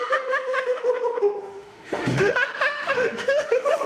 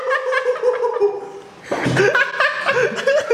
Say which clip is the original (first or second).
second